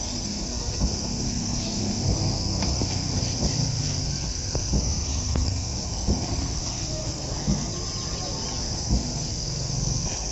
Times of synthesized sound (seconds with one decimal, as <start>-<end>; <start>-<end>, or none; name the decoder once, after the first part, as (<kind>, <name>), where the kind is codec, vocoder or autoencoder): 0.0-7.7 (codec, SNAC); 8.6-10.3